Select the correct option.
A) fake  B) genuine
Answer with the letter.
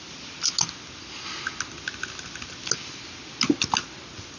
B